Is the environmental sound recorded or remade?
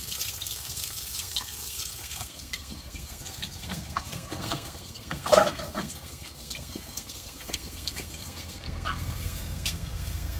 remade